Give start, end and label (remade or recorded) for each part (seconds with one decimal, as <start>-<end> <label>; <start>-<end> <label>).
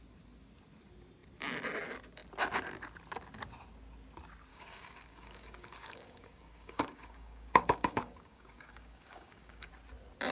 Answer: 0.0-4.5 recorded; 4.5-9.7 remade; 9.7-10.3 recorded